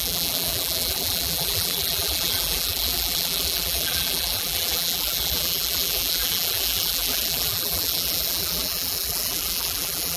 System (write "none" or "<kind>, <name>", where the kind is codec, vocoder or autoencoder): vocoder, BigVGAN v2